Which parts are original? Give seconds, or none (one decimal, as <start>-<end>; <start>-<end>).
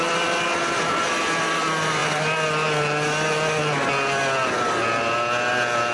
0.0-5.9